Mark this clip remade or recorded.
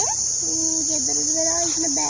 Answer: recorded